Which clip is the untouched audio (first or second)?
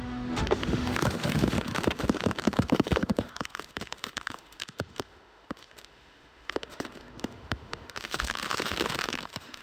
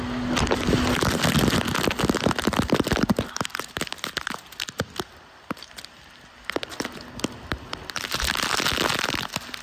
second